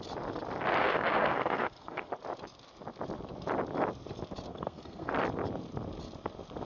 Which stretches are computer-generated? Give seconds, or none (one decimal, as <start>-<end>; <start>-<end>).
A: 0.8-2.1; 4.5-5.1